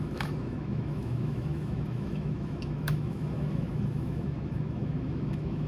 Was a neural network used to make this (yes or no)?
yes